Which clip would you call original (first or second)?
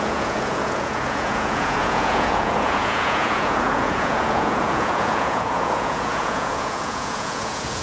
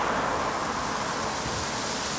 second